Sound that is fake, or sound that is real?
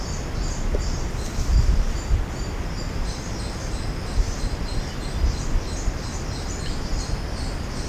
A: real